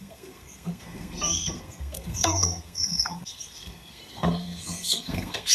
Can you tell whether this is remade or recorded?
remade